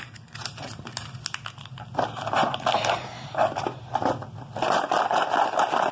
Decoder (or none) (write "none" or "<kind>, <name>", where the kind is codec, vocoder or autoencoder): none